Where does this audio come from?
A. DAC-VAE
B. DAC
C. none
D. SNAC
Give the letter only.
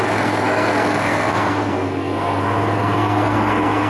D